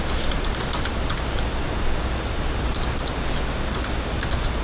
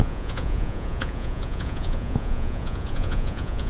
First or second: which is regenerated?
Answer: second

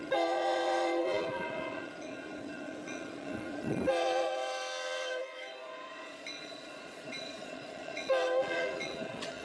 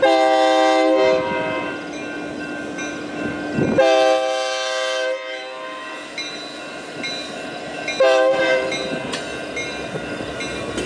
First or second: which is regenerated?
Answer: first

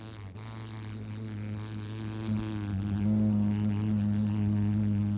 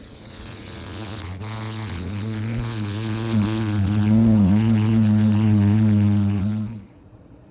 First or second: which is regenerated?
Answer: second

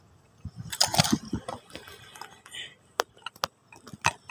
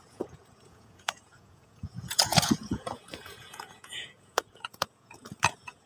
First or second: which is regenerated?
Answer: second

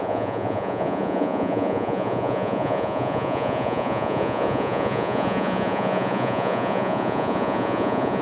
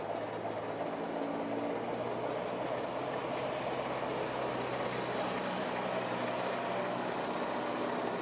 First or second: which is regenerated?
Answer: first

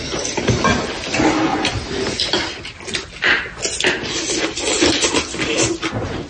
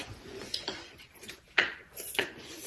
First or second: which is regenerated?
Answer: second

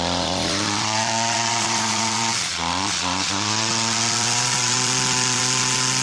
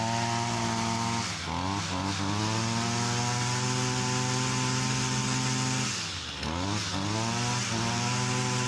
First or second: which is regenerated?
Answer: first